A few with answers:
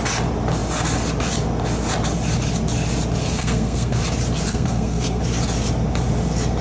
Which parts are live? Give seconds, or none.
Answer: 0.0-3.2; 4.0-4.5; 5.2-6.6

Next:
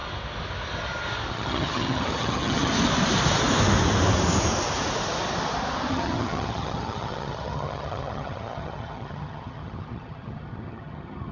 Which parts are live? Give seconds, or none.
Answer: 0.0-1.3; 2.7-5.9

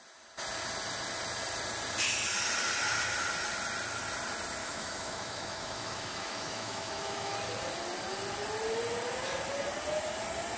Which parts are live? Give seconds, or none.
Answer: 0.0-4.6; 7.3-10.6

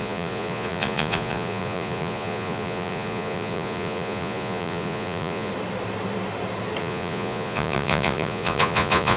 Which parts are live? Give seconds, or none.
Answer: 5.5-6.8

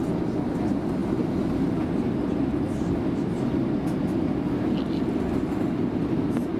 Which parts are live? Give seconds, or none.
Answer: 0.0-6.6

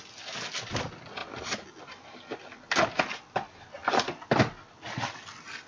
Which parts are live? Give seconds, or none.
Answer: 0.0-5.7

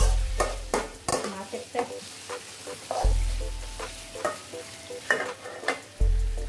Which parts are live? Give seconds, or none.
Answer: 1.1-5.0; 5.5-6.1

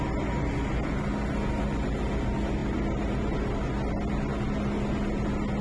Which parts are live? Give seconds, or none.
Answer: 0.0-5.6